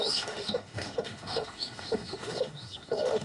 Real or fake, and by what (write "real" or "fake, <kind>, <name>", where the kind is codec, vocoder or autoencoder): fake, autoencoder, DAC-VAE